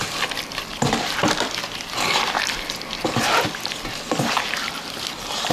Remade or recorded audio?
recorded